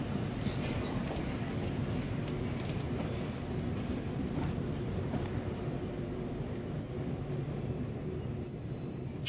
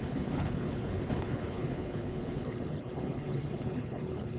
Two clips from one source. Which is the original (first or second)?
first